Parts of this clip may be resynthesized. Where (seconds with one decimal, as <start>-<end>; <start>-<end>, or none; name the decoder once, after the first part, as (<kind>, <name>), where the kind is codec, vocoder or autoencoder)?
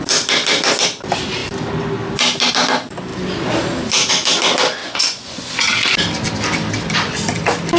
4.8-5.5 (vocoder, Vocos)